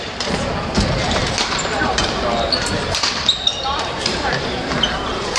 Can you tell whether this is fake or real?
fake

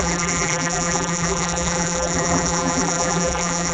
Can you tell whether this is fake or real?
fake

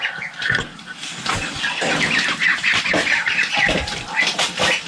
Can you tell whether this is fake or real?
fake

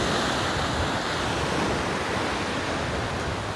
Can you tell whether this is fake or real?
real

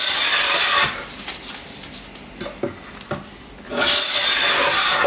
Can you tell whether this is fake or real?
real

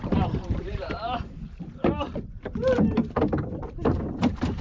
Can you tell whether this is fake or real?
fake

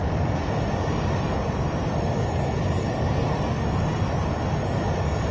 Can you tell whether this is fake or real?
real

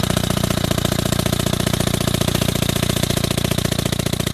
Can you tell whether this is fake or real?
fake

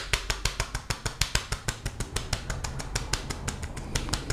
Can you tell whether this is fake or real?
real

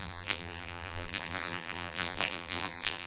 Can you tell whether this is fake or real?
fake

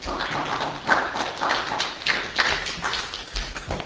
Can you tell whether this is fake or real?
real